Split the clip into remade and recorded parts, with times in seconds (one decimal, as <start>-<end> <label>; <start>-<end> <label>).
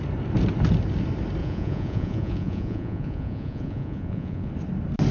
0.0-1.4 recorded; 1.4-4.5 remade; 4.5-5.1 recorded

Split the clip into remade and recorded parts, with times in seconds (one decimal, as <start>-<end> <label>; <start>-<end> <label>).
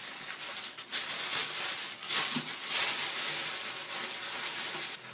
0.0-5.1 recorded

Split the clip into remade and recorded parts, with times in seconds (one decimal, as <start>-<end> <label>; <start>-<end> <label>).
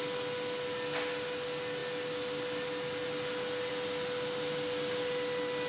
0.0-5.7 recorded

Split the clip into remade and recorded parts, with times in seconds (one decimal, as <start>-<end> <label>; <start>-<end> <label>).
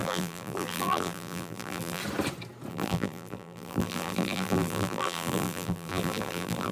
0.0-2.0 remade; 2.0-2.7 recorded; 2.7-6.7 remade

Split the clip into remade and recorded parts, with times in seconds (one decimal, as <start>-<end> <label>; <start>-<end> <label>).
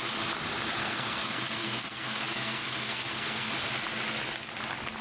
0.0-0.8 recorded; 0.8-3.5 remade; 3.5-5.0 recorded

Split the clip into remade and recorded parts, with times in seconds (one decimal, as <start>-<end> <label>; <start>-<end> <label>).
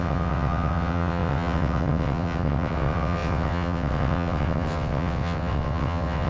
0.0-6.3 remade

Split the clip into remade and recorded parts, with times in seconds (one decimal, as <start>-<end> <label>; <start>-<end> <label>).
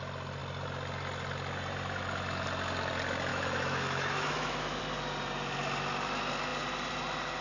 0.0-3.3 recorded; 3.3-4.8 remade; 4.8-7.4 recorded